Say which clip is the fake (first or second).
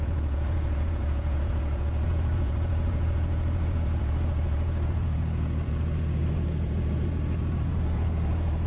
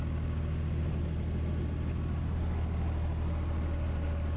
first